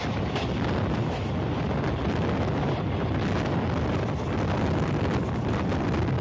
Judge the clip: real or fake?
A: real